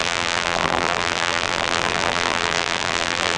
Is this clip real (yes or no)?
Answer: no